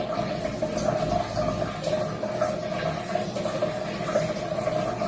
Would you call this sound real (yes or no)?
yes